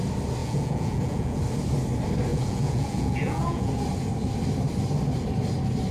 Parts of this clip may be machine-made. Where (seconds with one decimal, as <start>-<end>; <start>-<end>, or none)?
0.4-1.4; 2.3-3.7